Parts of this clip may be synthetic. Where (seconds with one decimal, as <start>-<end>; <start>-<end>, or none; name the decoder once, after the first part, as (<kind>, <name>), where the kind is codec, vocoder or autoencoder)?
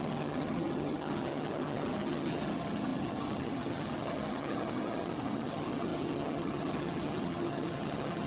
0.0-8.3 (vocoder, HiFi-GAN)